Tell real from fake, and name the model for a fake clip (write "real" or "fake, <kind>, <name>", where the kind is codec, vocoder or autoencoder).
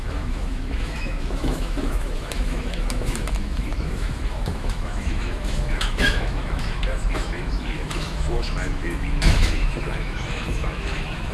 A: fake, autoencoder, DAC-VAE